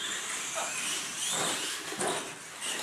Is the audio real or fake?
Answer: real